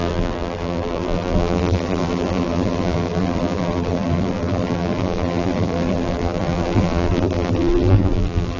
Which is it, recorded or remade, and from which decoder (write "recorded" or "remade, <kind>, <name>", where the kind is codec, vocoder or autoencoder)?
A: remade, vocoder, BigVGAN v2